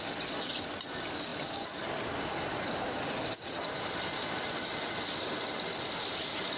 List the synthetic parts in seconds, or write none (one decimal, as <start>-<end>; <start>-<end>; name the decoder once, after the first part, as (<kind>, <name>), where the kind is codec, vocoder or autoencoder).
none

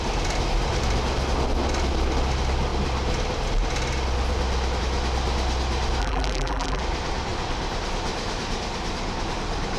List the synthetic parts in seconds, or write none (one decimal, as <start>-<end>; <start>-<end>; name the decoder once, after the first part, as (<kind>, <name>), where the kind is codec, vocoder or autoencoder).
6.0-6.8 (vocoder, BigVGAN v2)

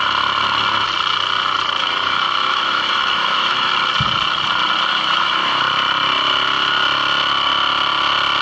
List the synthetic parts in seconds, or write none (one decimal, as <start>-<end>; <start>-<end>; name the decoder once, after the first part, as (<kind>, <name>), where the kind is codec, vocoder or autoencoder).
1.8-3.7 (autoencoder, DAC-VAE); 4.9-5.6

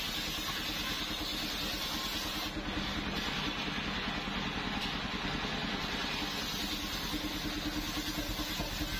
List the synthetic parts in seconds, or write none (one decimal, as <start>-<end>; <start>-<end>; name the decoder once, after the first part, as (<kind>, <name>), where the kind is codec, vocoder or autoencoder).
none